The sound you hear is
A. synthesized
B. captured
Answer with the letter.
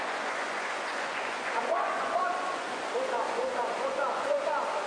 A